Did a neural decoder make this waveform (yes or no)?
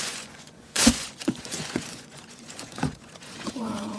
yes